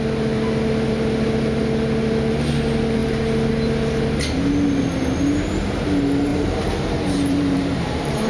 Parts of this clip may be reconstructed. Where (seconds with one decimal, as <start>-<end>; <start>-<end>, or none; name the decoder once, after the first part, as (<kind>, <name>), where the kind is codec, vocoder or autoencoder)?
6.3-8.3 (vocoder, BigVGAN v2)